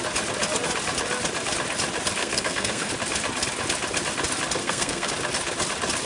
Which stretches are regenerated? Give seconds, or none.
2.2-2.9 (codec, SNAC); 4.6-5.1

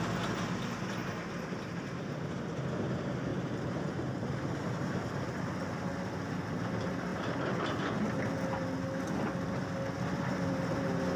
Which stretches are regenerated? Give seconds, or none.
3.3-5.6 (vocoder, BigVGAN v2)

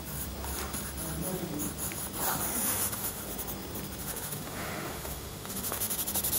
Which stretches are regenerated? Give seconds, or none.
2.6-3.2 (autoencoder, DAC-VAE); 4.0-6.0